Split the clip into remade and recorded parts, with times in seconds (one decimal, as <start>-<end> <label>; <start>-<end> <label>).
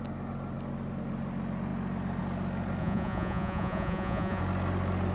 0.0-2.8 recorded; 2.8-4.4 remade; 4.4-5.1 recorded